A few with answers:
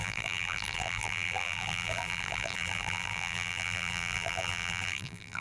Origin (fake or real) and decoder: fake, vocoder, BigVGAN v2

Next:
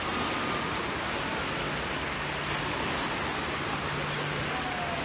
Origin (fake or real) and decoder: real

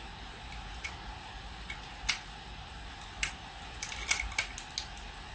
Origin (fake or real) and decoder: real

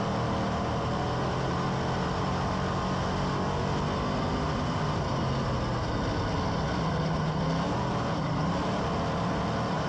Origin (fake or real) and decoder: real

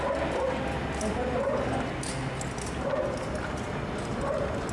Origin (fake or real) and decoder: real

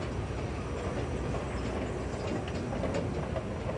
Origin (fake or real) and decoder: real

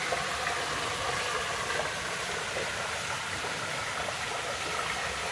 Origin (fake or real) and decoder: real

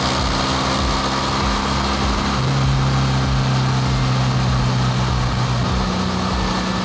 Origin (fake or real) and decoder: real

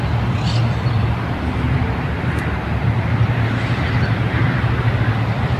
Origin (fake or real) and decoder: fake, vocoder, BigVGAN v2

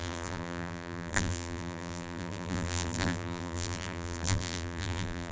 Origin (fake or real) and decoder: fake, vocoder, BigVGAN v2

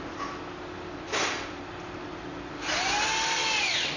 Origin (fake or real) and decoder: real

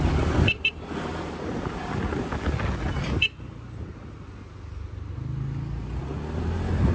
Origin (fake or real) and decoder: real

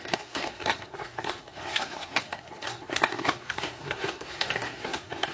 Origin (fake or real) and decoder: fake, codec, SNAC